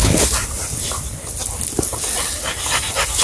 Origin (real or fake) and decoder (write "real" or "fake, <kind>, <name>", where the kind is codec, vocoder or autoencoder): real